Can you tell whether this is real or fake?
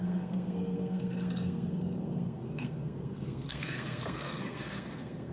fake